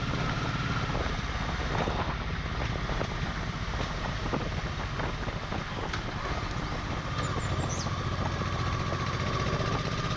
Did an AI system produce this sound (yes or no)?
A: no